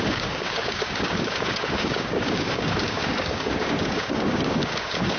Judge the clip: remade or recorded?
remade